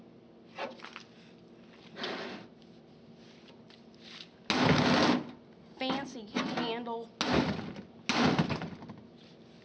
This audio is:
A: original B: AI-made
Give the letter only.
A